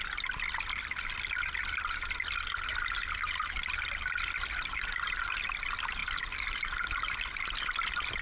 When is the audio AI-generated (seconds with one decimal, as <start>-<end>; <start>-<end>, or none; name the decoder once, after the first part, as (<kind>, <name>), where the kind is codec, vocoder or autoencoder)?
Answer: none